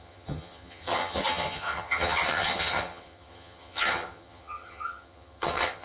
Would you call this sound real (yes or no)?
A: no